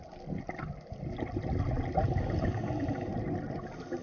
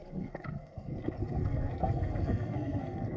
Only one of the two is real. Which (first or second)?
first